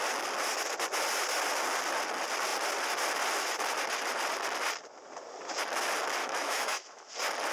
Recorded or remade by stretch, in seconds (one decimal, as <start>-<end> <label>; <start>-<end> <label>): 0.0-6.2 recorded; 6.2-7.1 remade; 7.1-7.5 recorded